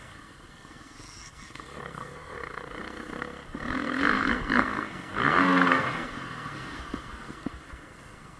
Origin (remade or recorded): remade